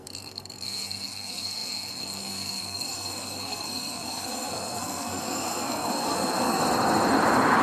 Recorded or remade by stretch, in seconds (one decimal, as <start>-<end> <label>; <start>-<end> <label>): 0.0-6.6 remade; 6.6-7.6 recorded